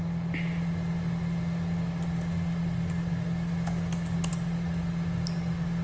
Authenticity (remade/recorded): recorded